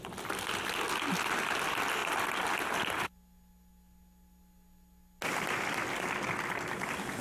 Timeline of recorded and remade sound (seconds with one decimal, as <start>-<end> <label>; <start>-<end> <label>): 0.0-7.2 recorded